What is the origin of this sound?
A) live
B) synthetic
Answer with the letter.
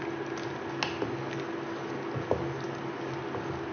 A